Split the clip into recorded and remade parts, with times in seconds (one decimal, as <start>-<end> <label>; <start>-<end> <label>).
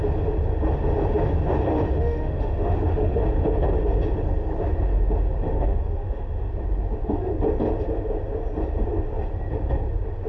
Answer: 0.0-1.7 recorded; 1.7-3.2 remade; 3.2-5.5 recorded; 5.5-6.5 remade; 6.5-10.3 recorded